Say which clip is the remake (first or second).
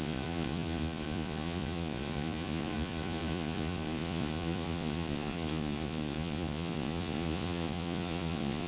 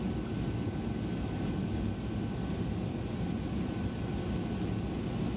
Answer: first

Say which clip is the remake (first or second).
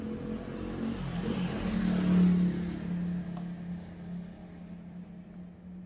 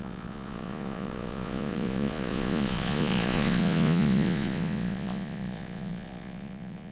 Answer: second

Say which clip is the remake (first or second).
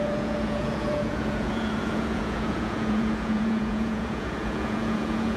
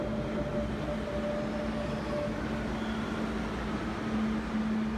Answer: first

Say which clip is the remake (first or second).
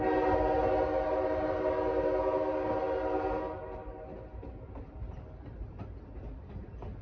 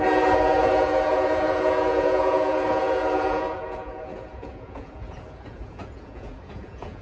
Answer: second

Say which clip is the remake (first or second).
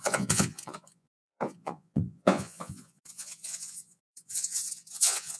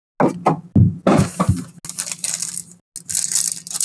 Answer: first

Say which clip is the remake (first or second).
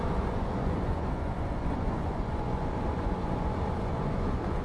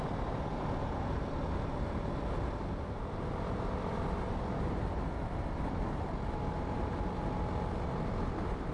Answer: first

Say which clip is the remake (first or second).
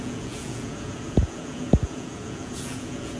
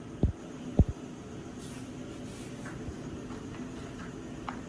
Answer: first